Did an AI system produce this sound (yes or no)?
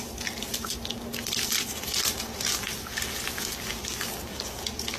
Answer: no